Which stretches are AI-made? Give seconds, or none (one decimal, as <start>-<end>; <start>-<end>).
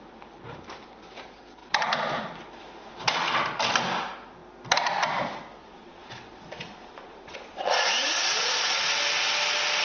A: 5.6-8.8